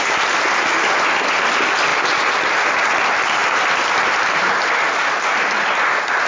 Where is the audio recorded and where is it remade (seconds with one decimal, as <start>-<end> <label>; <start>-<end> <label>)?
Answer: 0.0-1.9 recorded; 1.9-2.9 remade; 2.9-6.3 recorded